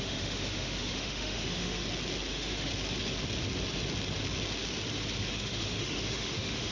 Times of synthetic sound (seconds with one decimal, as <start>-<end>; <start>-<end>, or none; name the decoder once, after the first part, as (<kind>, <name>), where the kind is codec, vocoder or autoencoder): 0.0-1.8 (autoencoder, DAC-VAE); 2.3-2.7; 5.3-6.7

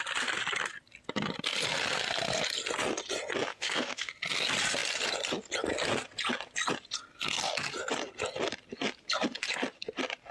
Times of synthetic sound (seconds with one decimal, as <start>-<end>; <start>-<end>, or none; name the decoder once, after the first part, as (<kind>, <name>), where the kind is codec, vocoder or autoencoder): 3.5-4.1 (autoencoder, DAC-VAE)

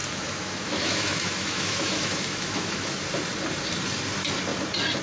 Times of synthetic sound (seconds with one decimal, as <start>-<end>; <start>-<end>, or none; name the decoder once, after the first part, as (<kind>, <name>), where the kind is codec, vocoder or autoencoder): 0.0-3.0 (autoencoder, DAC-VAE)

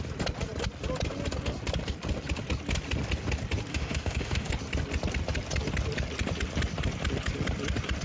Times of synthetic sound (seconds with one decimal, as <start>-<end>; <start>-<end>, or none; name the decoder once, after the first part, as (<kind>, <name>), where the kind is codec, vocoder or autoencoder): 3.7-4.5 (autoencoder, DAC-VAE)

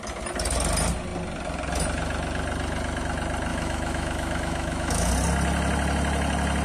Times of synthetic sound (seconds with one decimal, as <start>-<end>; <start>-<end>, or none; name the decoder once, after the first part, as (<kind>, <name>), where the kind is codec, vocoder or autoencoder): 3.5-5.1 (autoencoder, DAC-VAE)

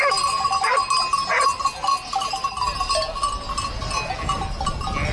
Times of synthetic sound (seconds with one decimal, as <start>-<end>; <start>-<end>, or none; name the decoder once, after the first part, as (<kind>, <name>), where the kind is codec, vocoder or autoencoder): none

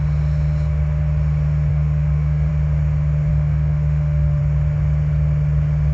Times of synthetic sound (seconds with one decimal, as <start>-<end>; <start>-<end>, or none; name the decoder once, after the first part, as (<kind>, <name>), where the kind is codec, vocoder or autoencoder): 1.7-2.5 (autoencoder, DAC-VAE); 3.3-4.4